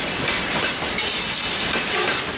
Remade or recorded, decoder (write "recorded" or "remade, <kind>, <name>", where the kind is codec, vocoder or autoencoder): recorded